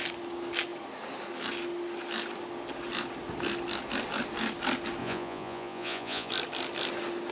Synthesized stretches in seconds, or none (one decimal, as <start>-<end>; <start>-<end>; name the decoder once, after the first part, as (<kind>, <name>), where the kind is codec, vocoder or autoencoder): 5.0-6.3 (vocoder, Vocos)